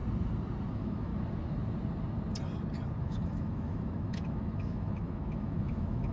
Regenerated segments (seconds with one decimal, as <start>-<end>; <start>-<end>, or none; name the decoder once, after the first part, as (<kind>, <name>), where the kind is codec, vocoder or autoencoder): 0.7-1.1 (autoencoder, DAC-VAE); 3.0-6.1